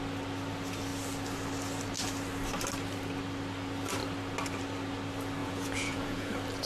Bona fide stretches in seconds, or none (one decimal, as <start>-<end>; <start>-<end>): 0.0-5.4; 6.3-6.7